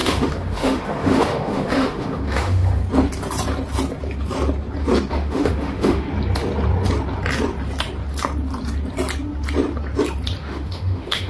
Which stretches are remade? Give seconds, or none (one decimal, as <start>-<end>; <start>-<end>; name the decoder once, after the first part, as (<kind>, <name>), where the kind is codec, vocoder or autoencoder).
0.0-2.8 (autoencoder, DAC-VAE); 5.1-6.1; 10.4-11.3